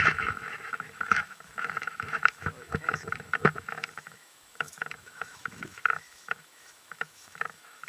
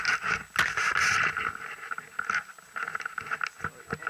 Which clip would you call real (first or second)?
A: second